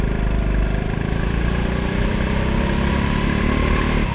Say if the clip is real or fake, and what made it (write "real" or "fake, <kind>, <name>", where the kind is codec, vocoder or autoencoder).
real